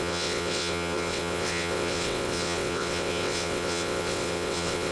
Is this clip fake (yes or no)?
yes